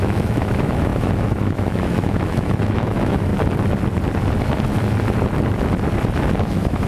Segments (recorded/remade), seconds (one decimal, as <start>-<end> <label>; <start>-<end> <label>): 0.0-3.3 remade; 3.3-6.5 recorded; 6.5-6.9 remade